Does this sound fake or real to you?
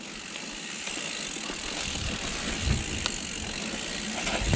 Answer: real